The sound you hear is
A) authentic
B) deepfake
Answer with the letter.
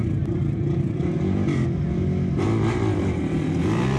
B